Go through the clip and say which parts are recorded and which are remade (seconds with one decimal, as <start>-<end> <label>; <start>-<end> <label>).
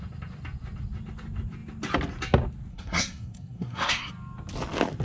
0.0-2.7 recorded; 2.7-4.1 remade; 4.1-5.0 recorded